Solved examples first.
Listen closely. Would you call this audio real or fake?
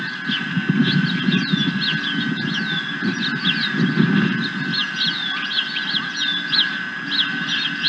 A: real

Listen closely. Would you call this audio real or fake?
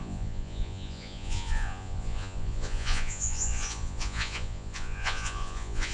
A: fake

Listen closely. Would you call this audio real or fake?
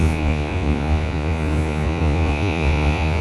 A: fake